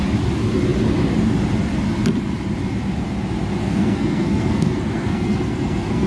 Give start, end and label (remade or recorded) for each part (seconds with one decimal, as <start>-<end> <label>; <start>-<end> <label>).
0.0-3.6 recorded; 3.6-6.1 remade